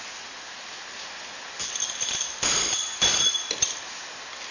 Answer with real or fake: real